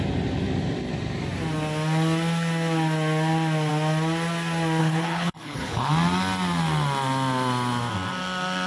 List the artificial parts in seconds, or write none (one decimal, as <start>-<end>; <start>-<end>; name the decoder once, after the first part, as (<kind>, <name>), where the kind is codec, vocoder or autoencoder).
4.8-5.9 (codec, HILCodec)